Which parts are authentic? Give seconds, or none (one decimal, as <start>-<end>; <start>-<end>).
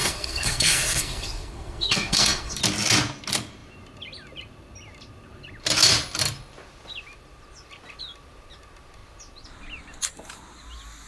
2.6-11.1